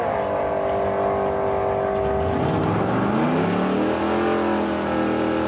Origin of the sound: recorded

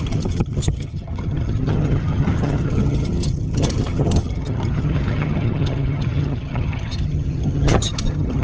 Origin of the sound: remade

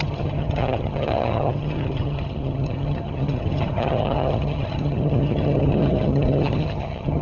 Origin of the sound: remade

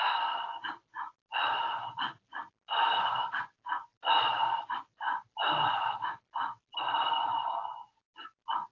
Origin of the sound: recorded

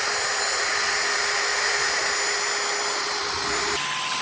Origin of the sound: recorded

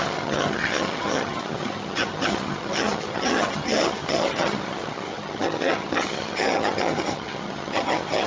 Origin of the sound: remade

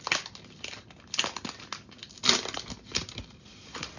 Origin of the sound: recorded